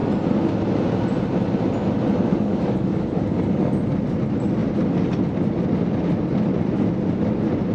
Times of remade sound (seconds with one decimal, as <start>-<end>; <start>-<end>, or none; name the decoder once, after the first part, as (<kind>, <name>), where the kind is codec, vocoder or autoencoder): 2.3-3.7 (codec, DAC)